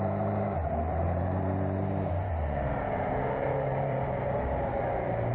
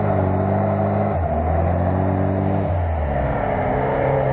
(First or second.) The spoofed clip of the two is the first